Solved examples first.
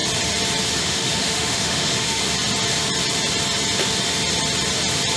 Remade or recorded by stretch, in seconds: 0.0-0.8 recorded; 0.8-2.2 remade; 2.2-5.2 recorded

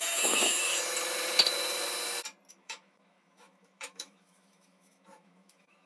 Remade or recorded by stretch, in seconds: 0.0-0.7 remade; 0.7-2.5 recorded; 2.5-5.9 remade